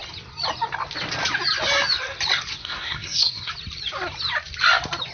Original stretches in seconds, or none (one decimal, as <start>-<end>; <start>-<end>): 0.0-2.6; 3.5-5.1